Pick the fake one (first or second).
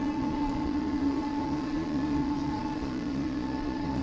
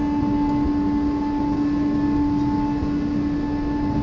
first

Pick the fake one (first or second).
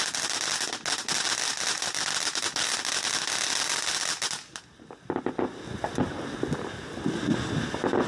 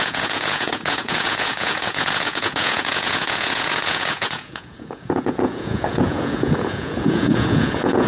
second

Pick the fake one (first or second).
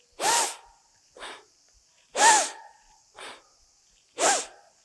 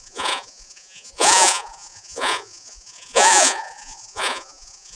second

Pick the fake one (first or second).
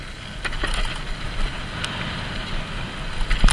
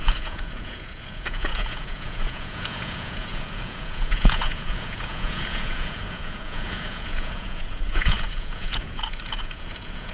second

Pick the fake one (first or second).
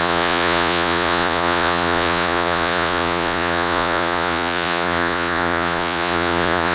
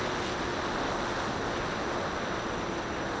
first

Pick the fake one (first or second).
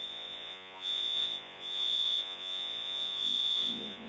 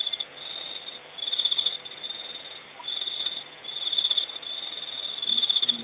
first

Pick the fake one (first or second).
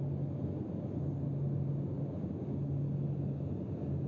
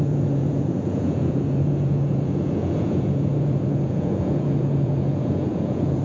second